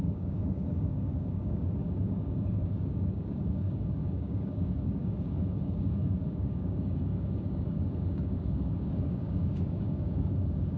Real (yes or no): no